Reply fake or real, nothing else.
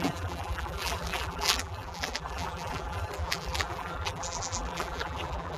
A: fake